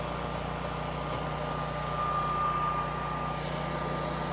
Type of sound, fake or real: real